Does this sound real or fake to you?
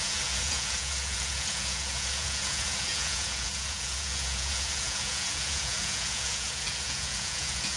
fake